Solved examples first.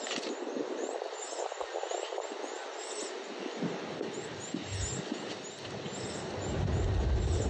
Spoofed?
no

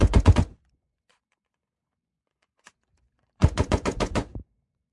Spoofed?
yes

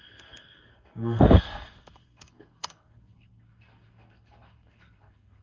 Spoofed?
yes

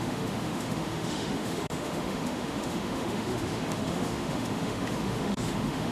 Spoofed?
yes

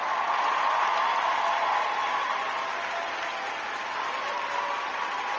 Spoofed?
no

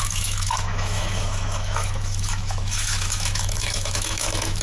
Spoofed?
yes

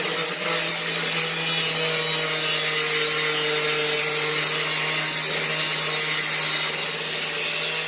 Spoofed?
no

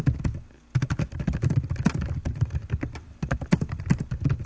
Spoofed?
no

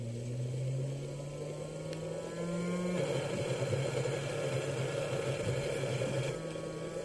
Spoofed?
no